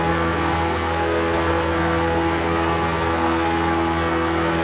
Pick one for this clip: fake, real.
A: fake